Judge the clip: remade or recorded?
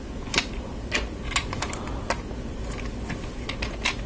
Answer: recorded